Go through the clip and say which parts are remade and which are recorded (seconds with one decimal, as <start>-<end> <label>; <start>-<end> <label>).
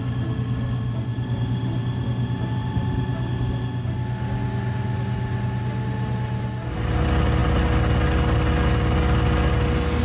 0.0-10.0 recorded